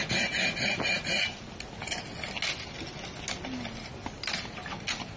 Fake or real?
real